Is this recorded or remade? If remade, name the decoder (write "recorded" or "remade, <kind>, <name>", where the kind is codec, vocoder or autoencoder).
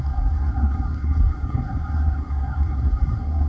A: remade, codec, SNAC